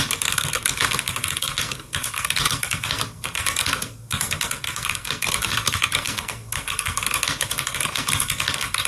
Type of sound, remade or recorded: remade